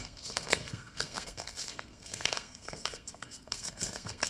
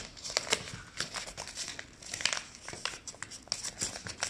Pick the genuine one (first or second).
second